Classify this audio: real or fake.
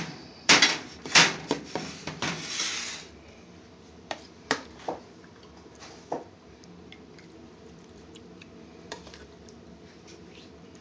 fake